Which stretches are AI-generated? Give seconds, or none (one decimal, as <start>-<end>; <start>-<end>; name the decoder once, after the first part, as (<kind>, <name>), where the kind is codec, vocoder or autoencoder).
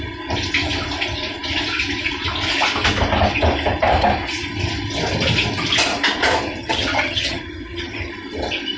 6.6-8.1 (vocoder, HiFi-GAN)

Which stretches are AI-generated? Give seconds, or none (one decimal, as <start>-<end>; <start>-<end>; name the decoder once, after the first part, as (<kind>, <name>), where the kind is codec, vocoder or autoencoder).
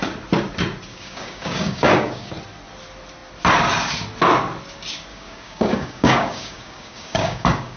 0.9-2.3 (codec, DAC); 5.1-7.8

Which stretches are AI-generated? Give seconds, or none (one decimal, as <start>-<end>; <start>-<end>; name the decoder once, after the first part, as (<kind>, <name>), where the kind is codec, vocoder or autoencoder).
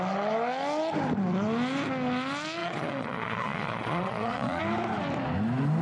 2.6-4.6 (vocoder, Vocos)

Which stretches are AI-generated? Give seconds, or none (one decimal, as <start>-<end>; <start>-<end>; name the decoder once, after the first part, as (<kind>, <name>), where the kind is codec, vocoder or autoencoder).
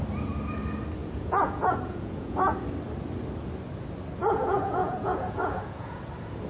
1.0-2.6 (vocoder, Vocos); 4.2-6.0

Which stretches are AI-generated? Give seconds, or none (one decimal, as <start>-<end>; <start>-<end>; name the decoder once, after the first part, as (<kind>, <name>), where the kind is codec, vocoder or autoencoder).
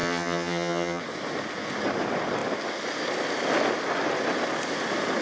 0.0-1.0 (vocoder, HiFi-GAN)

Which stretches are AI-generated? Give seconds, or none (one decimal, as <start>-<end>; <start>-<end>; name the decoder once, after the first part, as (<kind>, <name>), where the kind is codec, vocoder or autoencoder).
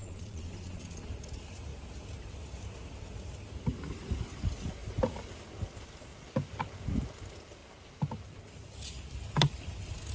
0.0-1.1 (vocoder, Vocos)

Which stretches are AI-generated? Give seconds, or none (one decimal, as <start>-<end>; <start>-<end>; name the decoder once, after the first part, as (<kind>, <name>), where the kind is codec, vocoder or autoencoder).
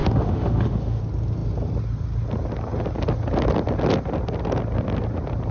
0.0-1.0 (autoencoder, DAC-VAE)